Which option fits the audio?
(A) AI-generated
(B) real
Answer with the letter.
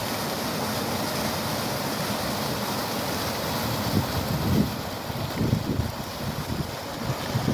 B